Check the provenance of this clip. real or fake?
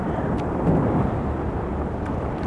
real